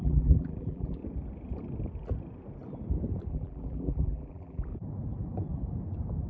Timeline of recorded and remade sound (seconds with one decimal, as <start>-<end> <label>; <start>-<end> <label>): 0.0-1.0 remade; 1.0-3.3 recorded; 3.3-4.7 remade; 4.7-6.3 recorded